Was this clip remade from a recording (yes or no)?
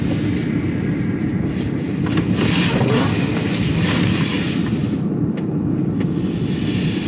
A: no